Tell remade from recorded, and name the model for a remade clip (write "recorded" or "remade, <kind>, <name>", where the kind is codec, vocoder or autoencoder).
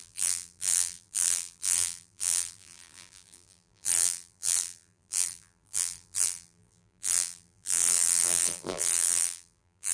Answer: remade, vocoder, BigVGAN v2